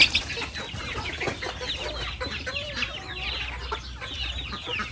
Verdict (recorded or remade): recorded